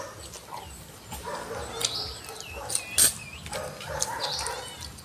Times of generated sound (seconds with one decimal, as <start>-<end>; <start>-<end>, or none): none